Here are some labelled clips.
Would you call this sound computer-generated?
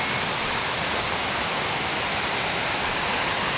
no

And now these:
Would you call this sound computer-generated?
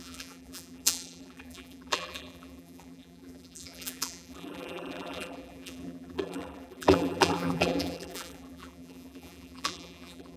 yes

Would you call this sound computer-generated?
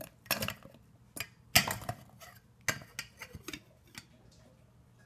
no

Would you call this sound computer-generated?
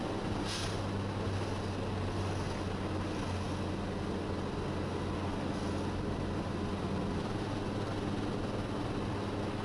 no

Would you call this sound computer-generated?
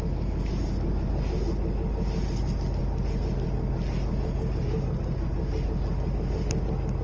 no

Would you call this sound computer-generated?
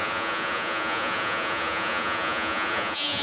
yes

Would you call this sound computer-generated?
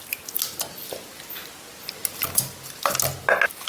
no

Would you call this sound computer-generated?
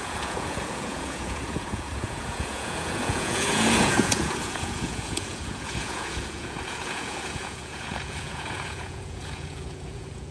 yes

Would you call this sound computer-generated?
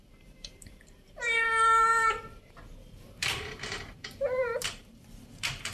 yes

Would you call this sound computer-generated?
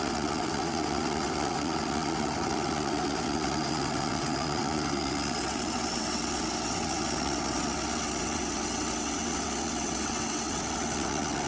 yes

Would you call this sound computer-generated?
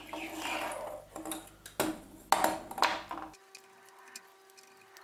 no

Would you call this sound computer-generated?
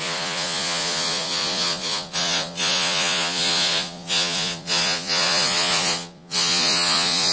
yes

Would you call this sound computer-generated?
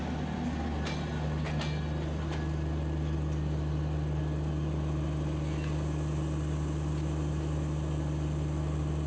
no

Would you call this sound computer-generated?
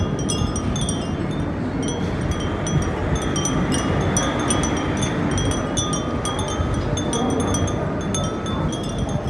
no